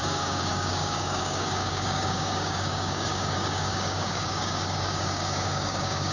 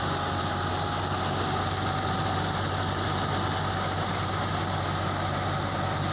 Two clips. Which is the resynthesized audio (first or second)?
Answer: first